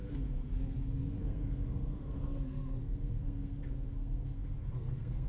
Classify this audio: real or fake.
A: fake